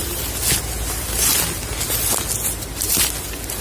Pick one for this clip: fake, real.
real